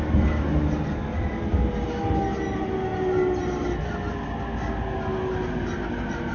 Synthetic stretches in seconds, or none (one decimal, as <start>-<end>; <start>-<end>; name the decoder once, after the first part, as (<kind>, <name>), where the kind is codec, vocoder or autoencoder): none